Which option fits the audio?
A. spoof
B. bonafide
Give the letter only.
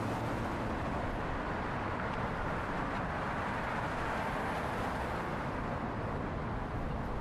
B